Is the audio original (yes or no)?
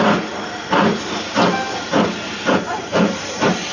yes